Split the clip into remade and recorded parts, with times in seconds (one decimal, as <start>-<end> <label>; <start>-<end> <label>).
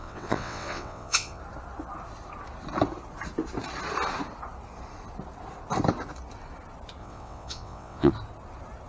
0.0-1.4 remade; 1.4-7.0 recorded; 7.0-8.1 remade; 8.1-8.9 recorded